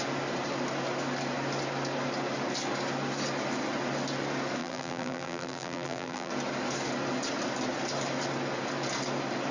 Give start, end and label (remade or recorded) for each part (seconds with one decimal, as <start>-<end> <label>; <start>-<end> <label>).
0.0-4.6 recorded; 4.6-6.3 remade; 6.3-9.5 recorded